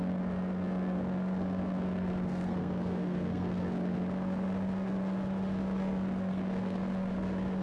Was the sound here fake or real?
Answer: fake